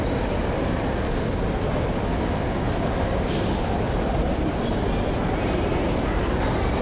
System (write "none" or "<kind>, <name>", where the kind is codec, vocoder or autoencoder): none